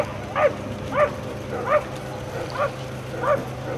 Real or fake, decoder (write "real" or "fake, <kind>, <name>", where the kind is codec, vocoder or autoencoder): real